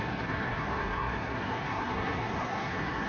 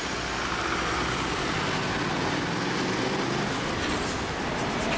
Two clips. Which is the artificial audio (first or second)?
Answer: first